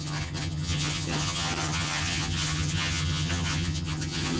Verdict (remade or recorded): remade